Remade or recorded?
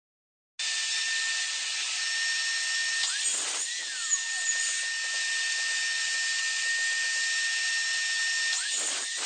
recorded